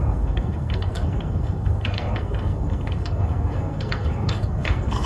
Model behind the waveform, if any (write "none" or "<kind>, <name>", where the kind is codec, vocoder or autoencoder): codec, SNAC